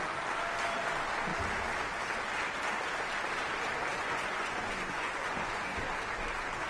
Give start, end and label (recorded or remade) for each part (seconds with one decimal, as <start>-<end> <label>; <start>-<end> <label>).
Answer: 0.0-3.9 recorded; 3.9-5.8 remade; 5.8-6.7 recorded